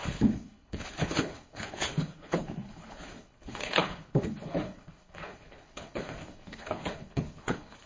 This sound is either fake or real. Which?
fake